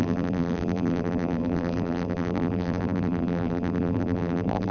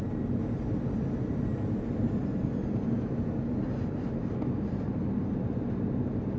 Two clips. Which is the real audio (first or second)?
second